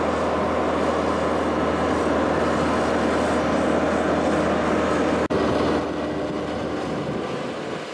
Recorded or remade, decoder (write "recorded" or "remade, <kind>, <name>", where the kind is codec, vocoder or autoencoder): recorded